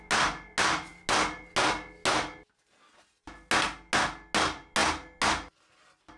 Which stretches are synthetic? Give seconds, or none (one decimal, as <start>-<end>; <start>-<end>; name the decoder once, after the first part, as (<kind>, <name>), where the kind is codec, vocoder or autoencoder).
none